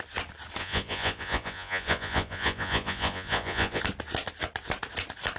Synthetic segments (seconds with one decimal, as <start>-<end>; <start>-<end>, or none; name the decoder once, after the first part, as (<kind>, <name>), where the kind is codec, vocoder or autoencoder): 0.6-3.8 (vocoder, Vocos)